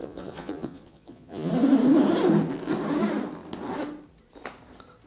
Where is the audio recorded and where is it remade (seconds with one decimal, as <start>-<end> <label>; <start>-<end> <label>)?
0.0-1.5 remade; 1.5-5.1 recorded